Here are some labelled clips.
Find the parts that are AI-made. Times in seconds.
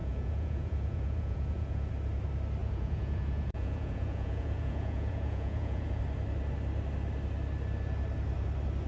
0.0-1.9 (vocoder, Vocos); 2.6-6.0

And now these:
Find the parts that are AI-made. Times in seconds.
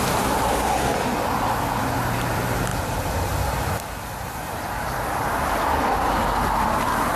2.7-6.6 (vocoder, BigVGAN v2)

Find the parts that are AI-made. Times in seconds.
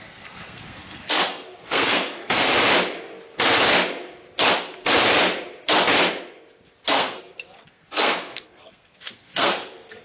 0.0-2.5 (codec, SNAC); 6.9-10.0